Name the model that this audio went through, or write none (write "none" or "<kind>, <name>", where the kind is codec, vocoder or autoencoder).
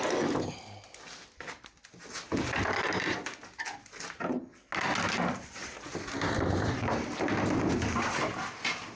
none